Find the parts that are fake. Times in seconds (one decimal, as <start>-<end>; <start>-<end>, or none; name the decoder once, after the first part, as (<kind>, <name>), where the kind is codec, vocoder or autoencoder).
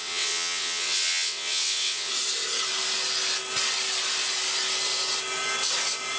0.0-2.1 (vocoder, WaveNeXt)